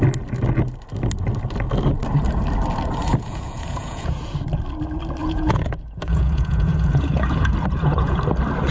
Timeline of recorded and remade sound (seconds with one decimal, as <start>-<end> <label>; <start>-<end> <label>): 0.0-3.1 recorded; 3.1-4.1 remade; 4.1-5.2 recorded; 5.2-8.2 remade; 8.2-8.7 recorded